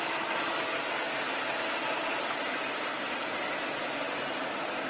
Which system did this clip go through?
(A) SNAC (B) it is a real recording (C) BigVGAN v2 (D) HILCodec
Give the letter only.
B